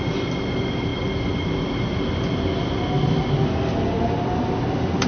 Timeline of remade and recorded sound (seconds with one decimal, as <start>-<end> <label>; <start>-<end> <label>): 0.0-5.1 recorded